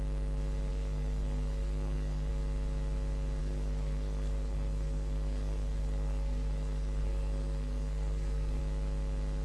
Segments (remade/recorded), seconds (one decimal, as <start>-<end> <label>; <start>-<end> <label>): 0.0-0.7 recorded; 0.7-2.3 remade; 2.3-3.4 recorded; 3.4-8.6 remade; 8.6-9.4 recorded